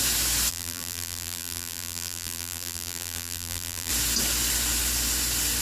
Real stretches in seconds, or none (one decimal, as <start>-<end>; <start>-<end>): 0.0-0.5; 3.9-5.6